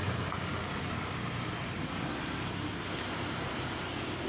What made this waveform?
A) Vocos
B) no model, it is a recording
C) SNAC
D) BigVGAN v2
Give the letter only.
B